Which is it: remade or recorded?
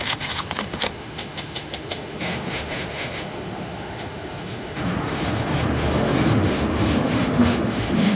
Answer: remade